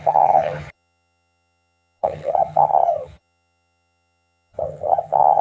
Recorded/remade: remade